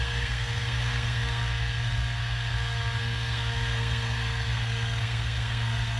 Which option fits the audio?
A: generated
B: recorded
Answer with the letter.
A